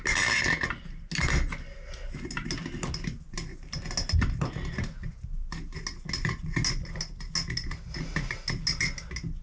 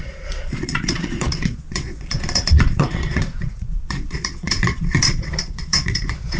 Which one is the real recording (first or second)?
first